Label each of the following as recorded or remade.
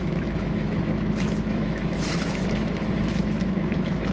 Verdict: remade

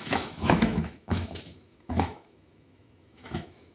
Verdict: remade